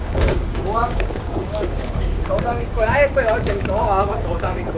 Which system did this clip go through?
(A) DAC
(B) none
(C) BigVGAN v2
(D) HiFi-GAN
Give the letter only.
A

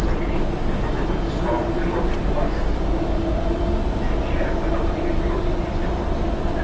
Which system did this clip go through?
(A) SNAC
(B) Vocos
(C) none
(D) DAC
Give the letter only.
C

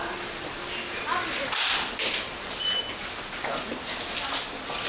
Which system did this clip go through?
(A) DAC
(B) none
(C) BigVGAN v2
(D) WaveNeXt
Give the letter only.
B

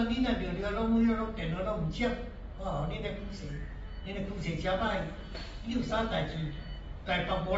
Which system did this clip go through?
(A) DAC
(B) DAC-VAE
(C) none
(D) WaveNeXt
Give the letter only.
C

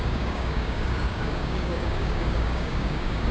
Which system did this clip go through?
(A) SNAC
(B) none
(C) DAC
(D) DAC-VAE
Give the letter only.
C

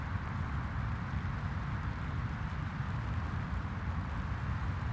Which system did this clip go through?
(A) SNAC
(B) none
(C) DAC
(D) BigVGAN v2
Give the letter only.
B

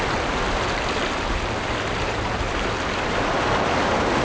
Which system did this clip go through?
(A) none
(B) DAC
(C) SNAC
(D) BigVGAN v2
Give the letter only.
A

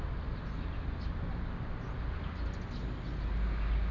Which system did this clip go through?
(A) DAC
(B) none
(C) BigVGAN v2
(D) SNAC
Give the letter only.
B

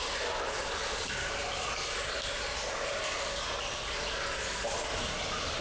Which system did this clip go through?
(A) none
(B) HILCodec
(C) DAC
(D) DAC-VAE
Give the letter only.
A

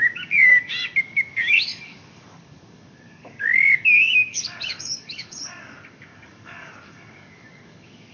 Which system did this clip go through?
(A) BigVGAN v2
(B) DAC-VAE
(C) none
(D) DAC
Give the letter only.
D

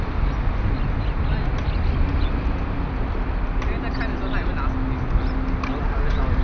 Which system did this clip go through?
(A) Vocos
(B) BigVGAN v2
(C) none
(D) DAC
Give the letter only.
C